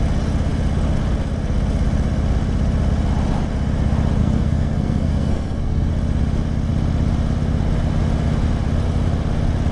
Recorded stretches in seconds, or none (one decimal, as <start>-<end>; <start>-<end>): 0.0-4.2; 5.9-9.7